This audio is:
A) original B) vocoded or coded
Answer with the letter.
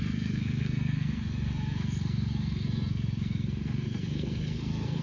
B